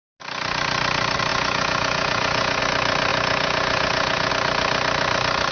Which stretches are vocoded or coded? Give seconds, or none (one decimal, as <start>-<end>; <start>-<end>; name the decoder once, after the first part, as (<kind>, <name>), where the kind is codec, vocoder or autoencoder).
1.3-2.6 (vocoder, Vocos); 3.1-4.3